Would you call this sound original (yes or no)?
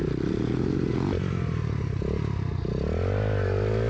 yes